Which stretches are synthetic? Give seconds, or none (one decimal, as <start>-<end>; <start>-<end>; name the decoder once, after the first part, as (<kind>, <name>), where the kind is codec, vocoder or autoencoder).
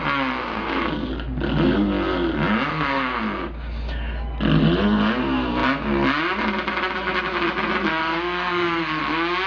0.4-1.1 (codec, SNAC); 2.7-3.2; 8.0-9.0